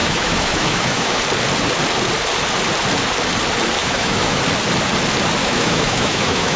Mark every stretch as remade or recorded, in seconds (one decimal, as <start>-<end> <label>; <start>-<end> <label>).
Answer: 0.0-1.2 remade; 1.2-3.8 recorded; 3.8-4.4 remade; 4.4-5.4 recorded; 5.4-6.6 remade